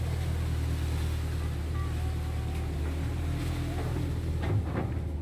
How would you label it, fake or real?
real